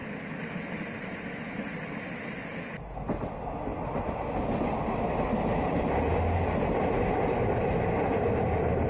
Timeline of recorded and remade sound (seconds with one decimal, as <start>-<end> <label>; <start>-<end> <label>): 0.0-8.9 recorded